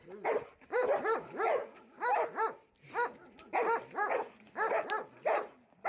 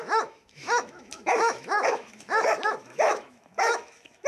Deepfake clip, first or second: second